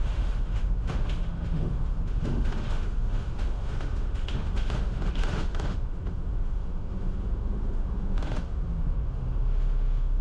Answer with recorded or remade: remade